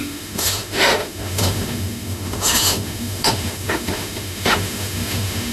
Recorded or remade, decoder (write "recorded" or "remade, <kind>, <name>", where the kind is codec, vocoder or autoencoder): remade, autoencoder, DAC-VAE